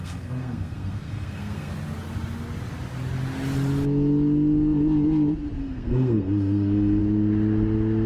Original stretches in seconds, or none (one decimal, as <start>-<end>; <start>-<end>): 1.7-5.6; 7.0-8.1